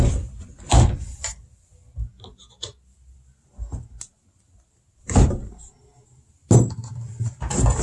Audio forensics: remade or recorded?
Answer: recorded